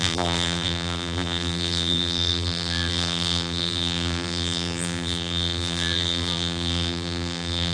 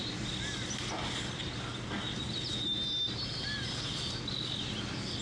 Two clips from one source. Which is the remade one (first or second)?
first